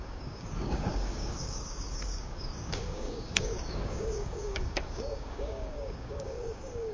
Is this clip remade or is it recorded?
remade